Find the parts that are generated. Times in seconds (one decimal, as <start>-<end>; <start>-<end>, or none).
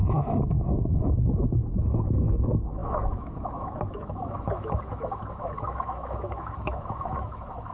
0.0-7.7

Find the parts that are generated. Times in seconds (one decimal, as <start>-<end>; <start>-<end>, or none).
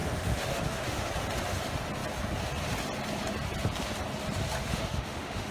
0.0-1.1; 4.7-5.5